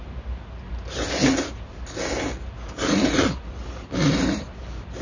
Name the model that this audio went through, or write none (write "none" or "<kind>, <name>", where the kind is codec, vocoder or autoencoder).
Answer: none